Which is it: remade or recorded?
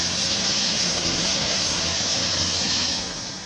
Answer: remade